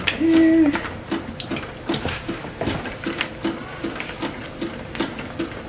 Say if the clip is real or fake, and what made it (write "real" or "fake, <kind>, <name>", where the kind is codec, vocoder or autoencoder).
real